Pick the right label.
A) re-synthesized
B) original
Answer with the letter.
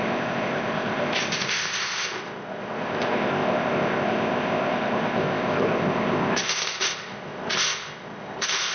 A